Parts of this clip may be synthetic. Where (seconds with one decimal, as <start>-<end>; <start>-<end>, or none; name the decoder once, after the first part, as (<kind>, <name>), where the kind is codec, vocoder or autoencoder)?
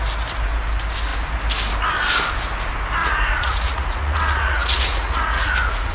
3.0-5.9 (vocoder, Vocos)